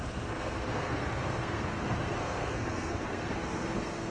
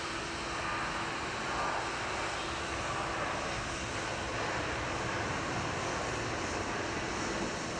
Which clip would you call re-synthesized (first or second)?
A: first